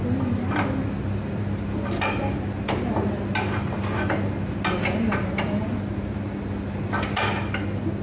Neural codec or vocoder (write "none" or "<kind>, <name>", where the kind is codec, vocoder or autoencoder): none